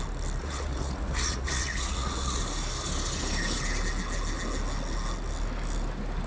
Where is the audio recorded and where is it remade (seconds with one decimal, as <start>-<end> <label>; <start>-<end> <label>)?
0.0-0.4 recorded; 0.4-2.4 remade; 2.4-6.3 recorded

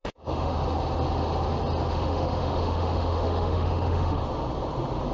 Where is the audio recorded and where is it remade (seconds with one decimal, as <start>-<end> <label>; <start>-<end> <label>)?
0.0-0.5 remade; 0.5-1.9 recorded; 1.9-4.2 remade; 4.2-5.1 recorded

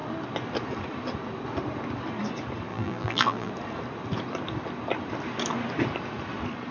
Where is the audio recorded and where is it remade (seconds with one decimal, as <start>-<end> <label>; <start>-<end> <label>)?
0.0-2.7 recorded; 2.7-3.5 remade; 3.5-6.7 recorded

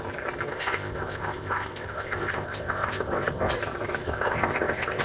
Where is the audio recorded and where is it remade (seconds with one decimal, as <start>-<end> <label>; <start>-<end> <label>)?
0.0-0.5 recorded; 0.5-3.5 remade; 3.5-4.0 recorded; 4.0-5.0 remade